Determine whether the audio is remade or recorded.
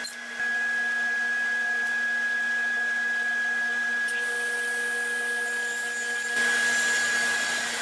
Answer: recorded